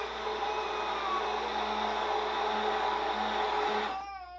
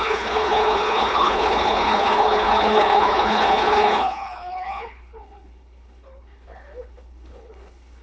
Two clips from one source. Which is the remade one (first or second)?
second